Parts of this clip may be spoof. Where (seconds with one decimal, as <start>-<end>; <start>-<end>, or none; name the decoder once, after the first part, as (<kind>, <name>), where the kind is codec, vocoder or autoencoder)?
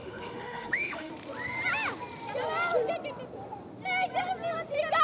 0.0-1.1 (autoencoder, DAC-VAE)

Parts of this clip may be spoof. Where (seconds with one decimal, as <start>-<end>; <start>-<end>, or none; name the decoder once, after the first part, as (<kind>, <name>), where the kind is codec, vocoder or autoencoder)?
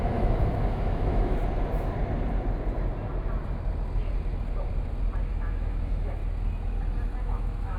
0.0-1.4 (autoencoder, DAC-VAE); 5.3-6.2; 7.2-7.8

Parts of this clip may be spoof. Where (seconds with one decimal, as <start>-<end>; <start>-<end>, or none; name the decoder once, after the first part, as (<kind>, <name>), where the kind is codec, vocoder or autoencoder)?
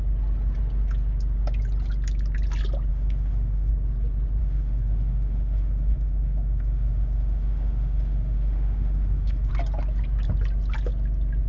2.9-3.7 (autoencoder, DAC-VAE); 4.4-9.5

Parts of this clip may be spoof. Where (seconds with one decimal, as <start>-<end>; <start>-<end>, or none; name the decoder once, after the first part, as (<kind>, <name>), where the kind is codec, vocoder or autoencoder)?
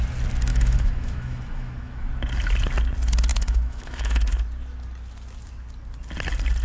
0.5-2.1 (autoencoder, DAC-VAE); 3.3-4.3